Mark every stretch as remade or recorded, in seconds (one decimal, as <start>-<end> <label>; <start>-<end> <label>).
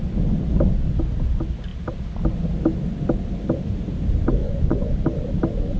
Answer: 0.0-4.4 recorded; 4.4-4.9 remade; 4.9-5.8 recorded